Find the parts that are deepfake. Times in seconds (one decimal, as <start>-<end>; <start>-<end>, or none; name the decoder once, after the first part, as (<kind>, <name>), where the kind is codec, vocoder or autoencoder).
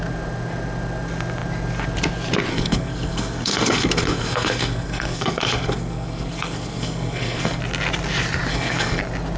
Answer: 2.5-7.6 (codec, SNAC); 8.5-9.0